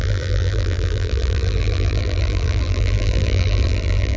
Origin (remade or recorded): remade